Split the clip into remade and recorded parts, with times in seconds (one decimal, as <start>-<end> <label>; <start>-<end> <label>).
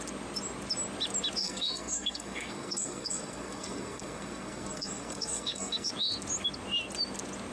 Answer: 0.0-1.4 recorded; 1.4-5.9 remade; 5.9-7.5 recorded